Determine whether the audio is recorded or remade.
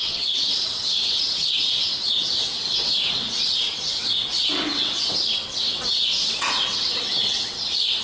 remade